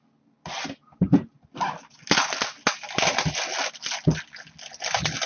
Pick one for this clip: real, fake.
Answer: real